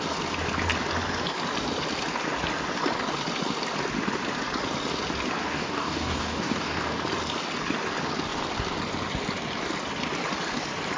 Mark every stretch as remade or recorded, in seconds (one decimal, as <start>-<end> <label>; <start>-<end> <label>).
0.0-5.4 recorded; 5.4-7.0 remade; 7.0-11.0 recorded